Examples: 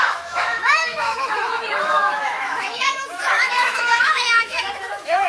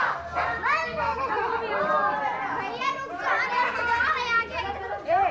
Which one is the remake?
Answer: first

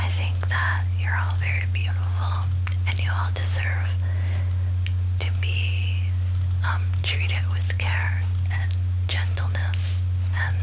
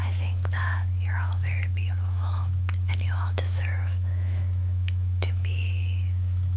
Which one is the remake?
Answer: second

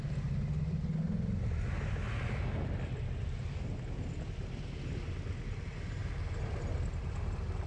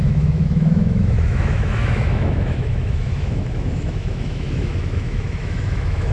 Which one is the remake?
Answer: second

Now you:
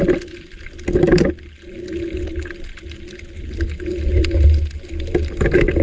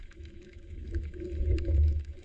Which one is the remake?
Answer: second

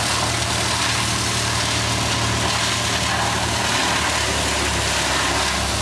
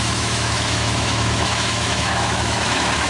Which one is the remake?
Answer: second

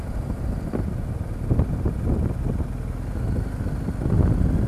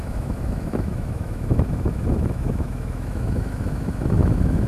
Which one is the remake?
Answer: second